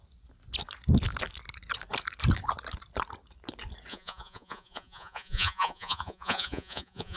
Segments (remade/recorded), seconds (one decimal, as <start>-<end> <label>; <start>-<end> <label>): 0.0-3.9 recorded; 3.9-7.2 remade